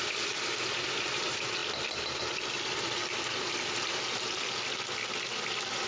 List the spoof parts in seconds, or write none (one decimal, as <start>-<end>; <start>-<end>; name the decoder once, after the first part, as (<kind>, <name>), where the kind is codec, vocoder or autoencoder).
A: none